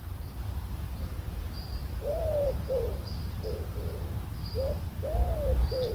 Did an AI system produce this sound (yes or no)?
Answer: yes